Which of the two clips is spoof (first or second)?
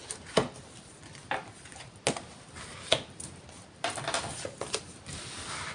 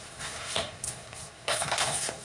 second